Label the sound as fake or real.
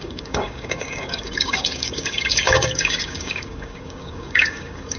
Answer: fake